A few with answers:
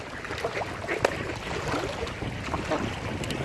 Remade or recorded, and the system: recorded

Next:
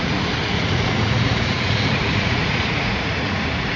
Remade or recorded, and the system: remade, vocoder, Vocos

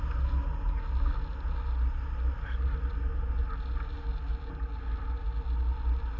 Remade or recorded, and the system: recorded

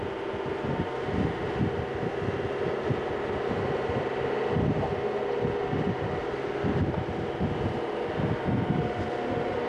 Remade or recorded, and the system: recorded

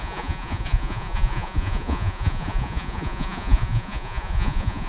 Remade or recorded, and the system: remade, vocoder, Vocos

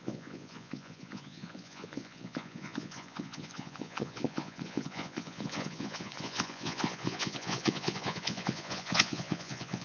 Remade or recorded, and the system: remade, vocoder, Vocos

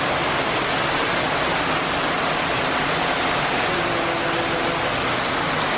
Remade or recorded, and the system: recorded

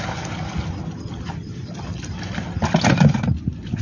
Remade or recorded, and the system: recorded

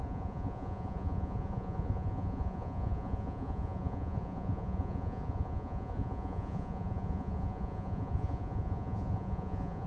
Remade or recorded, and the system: remade, vocoder, Vocos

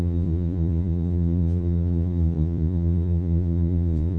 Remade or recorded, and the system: remade, vocoder, Vocos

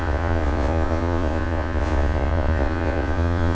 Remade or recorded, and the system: remade, vocoder, Vocos